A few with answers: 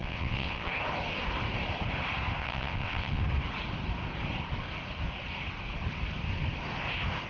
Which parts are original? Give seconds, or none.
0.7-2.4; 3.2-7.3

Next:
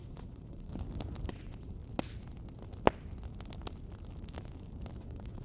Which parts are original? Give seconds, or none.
0.7-1.3; 1.8-5.0

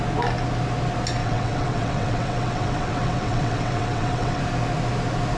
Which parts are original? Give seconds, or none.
0.0-1.2; 4.4-5.4